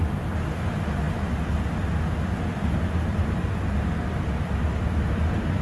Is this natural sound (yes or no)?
yes